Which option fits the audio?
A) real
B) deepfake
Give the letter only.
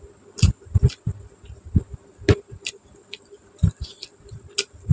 A